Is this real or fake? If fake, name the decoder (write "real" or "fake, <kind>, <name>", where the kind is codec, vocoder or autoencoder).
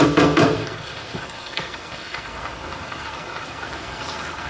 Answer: fake, codec, SNAC